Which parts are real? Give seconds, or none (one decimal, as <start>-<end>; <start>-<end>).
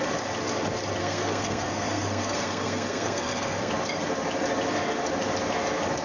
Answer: 0.0-1.0; 3.7-6.0